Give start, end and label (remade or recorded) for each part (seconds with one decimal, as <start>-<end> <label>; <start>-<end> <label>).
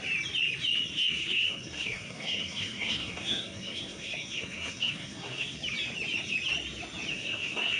0.0-0.9 recorded; 0.9-5.6 remade; 5.6-7.1 recorded; 7.1-7.8 remade